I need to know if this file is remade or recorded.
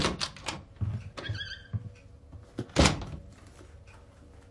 recorded